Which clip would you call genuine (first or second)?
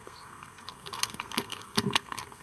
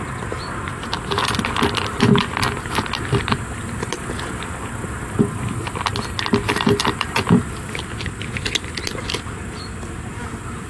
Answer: second